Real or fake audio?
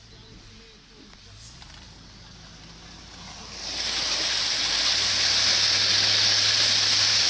real